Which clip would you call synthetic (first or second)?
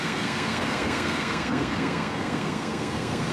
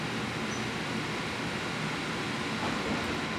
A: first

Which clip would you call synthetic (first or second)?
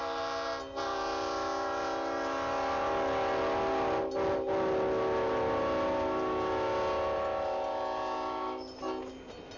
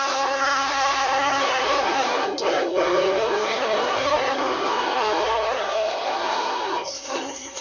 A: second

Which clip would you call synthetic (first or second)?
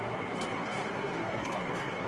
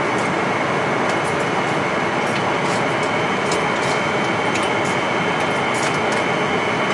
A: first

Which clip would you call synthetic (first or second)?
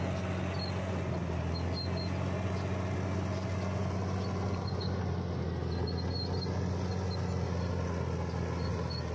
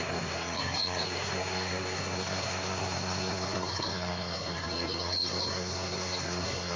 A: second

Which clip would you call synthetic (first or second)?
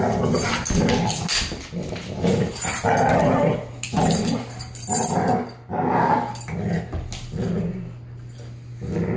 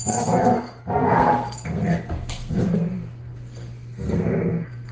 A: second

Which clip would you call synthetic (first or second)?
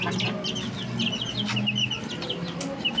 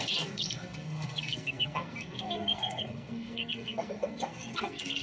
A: second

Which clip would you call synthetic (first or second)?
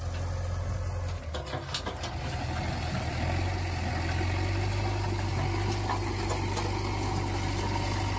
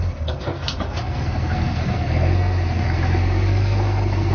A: second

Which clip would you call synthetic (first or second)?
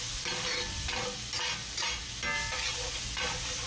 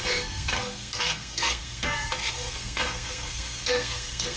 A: second